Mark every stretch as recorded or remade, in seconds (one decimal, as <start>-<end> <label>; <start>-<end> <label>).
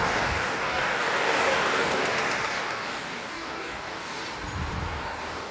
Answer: 0.0-2.0 remade; 2.0-2.5 recorded; 2.5-4.2 remade; 4.2-4.9 recorded; 4.9-5.5 remade